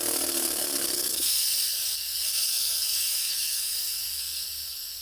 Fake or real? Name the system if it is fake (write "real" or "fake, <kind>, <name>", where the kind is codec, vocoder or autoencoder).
fake, codec, SNAC